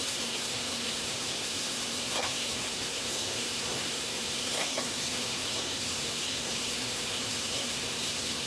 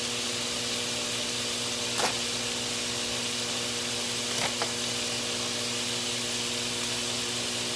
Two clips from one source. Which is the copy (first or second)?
first